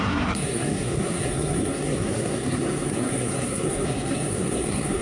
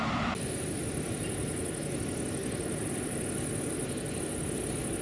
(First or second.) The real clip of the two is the second